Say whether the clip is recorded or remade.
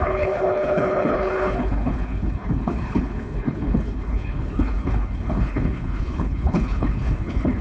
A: remade